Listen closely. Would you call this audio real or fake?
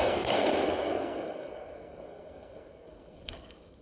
fake